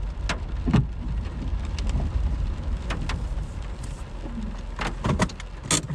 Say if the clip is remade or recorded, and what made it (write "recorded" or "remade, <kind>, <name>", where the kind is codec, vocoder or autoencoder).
recorded